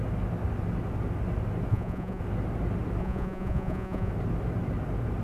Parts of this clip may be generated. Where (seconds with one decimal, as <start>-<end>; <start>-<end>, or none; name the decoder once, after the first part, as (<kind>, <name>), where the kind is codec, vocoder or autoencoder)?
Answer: 1.7-2.2 (vocoder, Vocos); 3.0-4.1